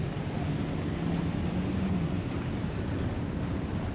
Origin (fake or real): real